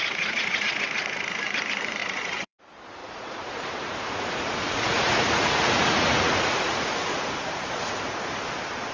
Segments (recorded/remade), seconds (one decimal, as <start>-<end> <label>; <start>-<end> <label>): 0.0-1.4 remade; 1.4-2.0 recorded; 2.0-2.6 remade; 2.6-3.0 recorded; 3.0-7.9 remade; 7.9-8.9 recorded